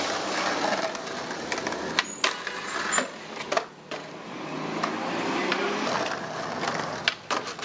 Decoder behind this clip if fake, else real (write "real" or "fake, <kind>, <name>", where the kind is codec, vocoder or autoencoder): real